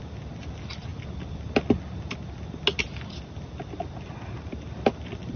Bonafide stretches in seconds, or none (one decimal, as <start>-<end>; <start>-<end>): 0.0-5.4